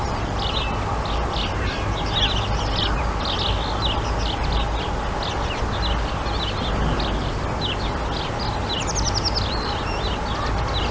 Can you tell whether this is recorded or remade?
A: recorded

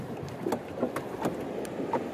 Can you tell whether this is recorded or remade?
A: recorded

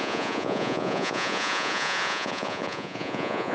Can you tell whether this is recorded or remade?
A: remade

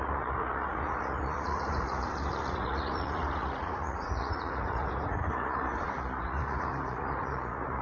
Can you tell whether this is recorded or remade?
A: remade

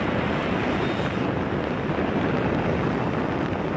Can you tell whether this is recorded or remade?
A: recorded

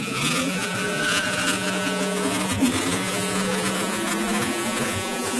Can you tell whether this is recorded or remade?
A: remade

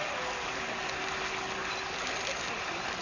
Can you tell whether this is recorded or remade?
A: recorded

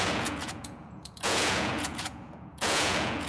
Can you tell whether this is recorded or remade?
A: remade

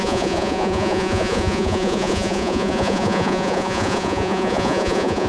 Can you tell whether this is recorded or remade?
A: remade